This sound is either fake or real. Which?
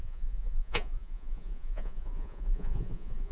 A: fake